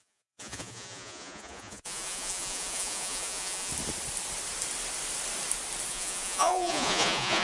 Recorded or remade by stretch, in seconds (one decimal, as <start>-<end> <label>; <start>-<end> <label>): 0.0-3.7 remade; 3.7-5.9 recorded; 5.9-7.4 remade